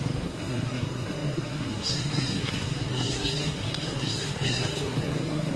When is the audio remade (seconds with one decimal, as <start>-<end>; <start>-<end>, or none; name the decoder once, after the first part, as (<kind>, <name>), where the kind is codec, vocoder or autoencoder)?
0.0-5.6 (codec, SNAC)